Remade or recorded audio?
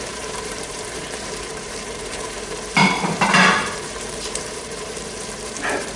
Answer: remade